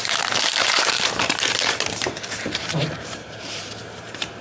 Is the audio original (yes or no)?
no